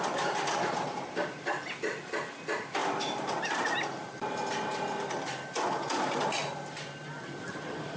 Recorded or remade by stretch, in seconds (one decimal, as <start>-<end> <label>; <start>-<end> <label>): 0.0-8.0 recorded